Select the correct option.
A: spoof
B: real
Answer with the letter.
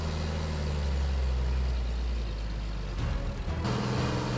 B